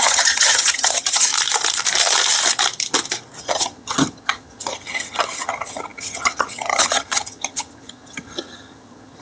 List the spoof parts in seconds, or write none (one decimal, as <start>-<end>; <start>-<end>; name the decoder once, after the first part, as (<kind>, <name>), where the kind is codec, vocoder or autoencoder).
0.0-1.3 (vocoder, HiFi-GAN); 3.4-9.2